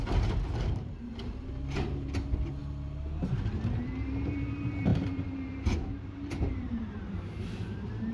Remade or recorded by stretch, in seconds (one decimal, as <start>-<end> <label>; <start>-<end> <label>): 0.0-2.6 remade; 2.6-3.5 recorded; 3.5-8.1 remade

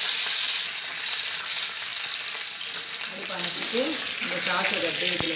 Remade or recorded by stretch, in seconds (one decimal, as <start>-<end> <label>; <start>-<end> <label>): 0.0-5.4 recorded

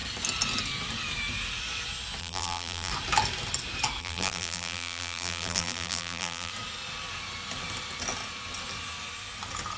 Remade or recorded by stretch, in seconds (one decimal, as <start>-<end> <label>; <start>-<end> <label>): 0.0-2.2 recorded; 2.2-2.9 remade; 2.9-4.0 recorded; 4.0-6.5 remade; 6.5-9.8 recorded